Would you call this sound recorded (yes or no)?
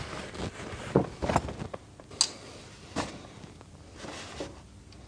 yes